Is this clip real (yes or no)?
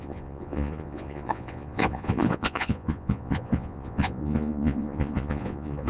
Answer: no